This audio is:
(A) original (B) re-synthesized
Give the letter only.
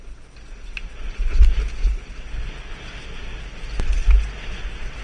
A